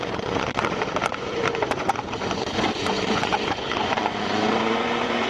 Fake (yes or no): yes